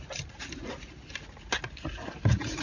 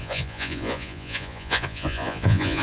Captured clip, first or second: first